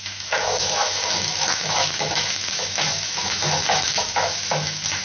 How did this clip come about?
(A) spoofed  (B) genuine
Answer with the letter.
A